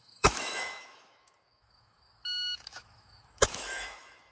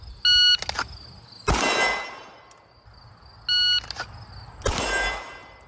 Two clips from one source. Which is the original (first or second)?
second